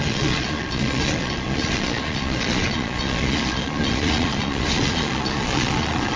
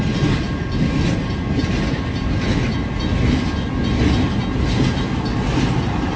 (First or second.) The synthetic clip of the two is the first